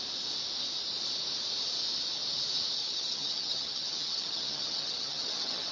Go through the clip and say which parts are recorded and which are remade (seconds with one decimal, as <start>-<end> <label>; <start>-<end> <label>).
0.0-2.8 recorded; 2.8-5.7 remade